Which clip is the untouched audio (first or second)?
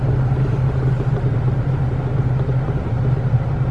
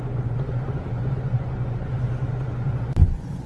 first